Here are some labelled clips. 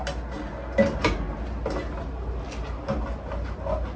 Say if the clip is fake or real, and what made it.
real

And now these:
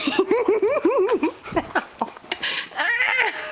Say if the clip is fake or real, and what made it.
real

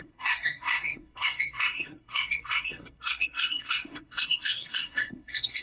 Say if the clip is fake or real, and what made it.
fake, codec, SNAC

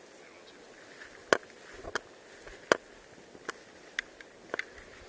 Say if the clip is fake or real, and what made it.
real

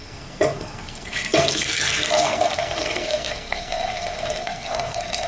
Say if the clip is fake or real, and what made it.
fake, codec, SNAC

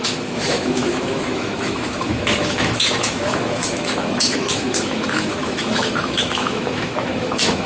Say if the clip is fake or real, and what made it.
fake, autoencoder, DAC-VAE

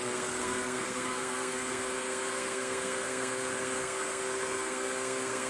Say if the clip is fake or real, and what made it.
fake, codec, SNAC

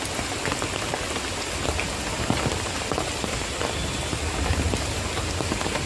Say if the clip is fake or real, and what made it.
real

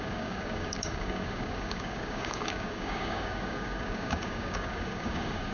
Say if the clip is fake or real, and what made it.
fake, codec, DAC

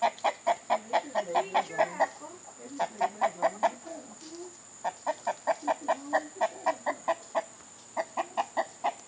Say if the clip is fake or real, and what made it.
real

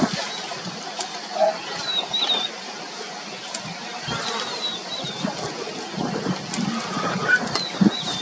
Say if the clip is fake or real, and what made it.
real